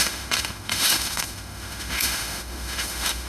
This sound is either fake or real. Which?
fake